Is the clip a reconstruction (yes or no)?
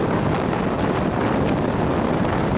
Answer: no